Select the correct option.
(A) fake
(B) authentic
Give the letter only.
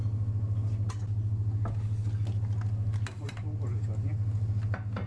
B